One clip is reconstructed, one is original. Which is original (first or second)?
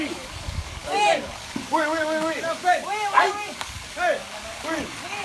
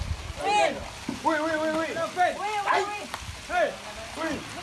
second